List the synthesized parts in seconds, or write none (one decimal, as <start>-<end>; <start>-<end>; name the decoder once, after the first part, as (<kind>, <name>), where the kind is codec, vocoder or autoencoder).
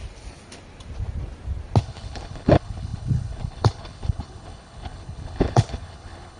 1.8-6.4 (codec, HILCodec)